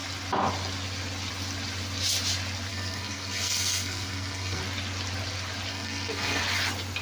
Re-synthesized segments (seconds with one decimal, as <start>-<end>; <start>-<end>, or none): 2.7-4.6; 5.7-6.4